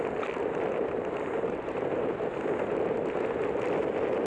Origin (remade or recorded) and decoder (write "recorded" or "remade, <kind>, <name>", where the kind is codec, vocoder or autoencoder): recorded